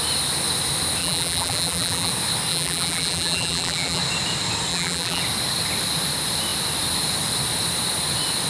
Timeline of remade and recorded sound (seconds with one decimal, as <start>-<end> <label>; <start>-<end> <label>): 0.0-1.0 recorded; 1.0-2.1 remade; 2.1-2.5 recorded; 2.5-4.0 remade; 4.0-4.7 recorded; 4.7-5.2 remade; 5.2-8.5 recorded